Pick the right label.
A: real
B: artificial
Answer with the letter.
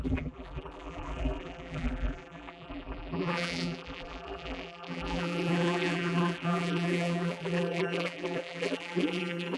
B